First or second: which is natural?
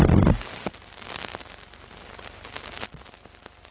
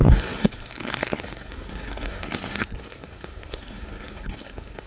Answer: first